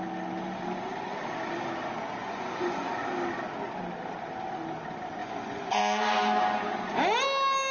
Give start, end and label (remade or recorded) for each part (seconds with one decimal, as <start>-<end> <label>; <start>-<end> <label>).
0.0-2.2 recorded; 2.2-2.9 remade; 2.9-5.2 recorded; 5.2-5.8 remade; 5.8-7.7 recorded